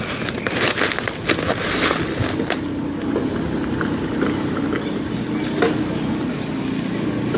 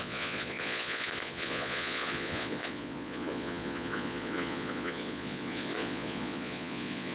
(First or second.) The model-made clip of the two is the second